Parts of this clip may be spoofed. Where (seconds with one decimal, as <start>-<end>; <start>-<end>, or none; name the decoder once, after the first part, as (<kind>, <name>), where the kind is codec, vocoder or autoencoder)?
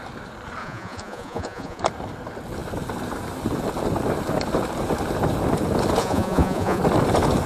0.6-1.8 (vocoder, Vocos); 6.0-6.8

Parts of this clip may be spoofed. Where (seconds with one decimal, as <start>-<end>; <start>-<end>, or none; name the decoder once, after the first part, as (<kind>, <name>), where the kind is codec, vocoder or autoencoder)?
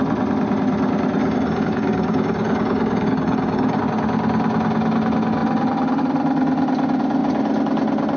1.2-3.8 (codec, DAC)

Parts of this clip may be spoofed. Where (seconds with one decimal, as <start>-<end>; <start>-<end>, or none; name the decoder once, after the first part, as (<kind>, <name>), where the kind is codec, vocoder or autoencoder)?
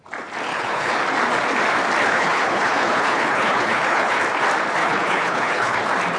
0.5-1.0 (codec, HILCodec); 2.0-4.2; 4.8-5.8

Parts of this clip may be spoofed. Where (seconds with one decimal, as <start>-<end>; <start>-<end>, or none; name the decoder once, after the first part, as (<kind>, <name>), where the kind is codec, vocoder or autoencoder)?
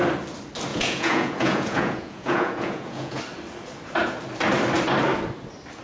0.7-3.2 (vocoder, Vocos)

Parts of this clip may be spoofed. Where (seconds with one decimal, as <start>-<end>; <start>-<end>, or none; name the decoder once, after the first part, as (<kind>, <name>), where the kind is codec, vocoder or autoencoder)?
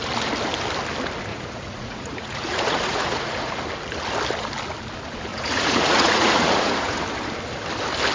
1.3-3.6 (vocoder, Vocos); 5.3-7.0